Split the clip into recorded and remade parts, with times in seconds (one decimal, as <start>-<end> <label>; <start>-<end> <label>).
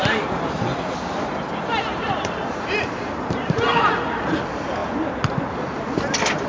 0.0-1.9 recorded; 1.9-3.6 remade; 3.6-6.5 recorded